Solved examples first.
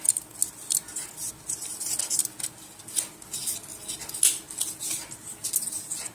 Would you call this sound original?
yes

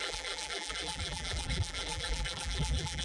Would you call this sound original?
no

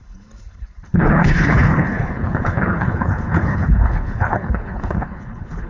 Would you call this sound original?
no